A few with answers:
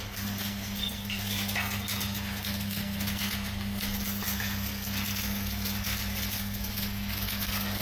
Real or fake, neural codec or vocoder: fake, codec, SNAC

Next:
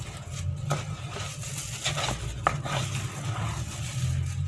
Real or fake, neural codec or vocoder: real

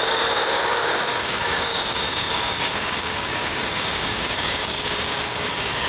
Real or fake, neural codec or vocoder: fake, codec, DAC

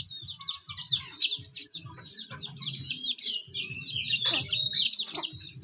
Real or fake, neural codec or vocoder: real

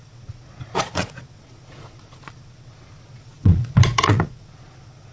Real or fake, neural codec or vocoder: fake, vocoder, Vocos